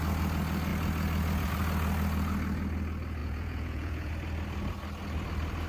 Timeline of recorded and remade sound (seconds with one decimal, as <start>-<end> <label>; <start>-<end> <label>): 0.0-3.2 recorded; 3.2-4.1 remade; 4.1-5.7 recorded